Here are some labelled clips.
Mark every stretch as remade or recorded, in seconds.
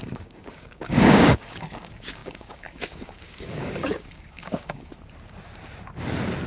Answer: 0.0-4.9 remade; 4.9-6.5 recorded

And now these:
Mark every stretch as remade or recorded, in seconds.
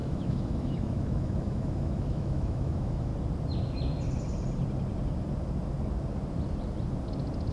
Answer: 0.0-3.1 remade; 3.1-7.5 recorded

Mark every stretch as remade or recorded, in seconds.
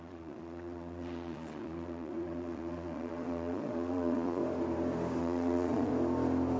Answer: 0.0-4.4 remade; 4.4-5.2 recorded; 5.2-5.9 remade; 5.9-6.6 recorded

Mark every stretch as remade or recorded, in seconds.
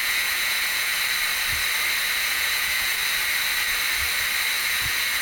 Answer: 0.0-0.9 remade; 0.9-2.2 recorded; 2.2-3.0 remade; 3.0-4.6 recorded; 4.6-5.2 remade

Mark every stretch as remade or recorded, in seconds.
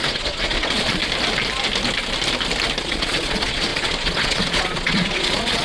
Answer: 0.0-1.0 remade; 1.0-2.8 recorded; 2.8-5.6 remade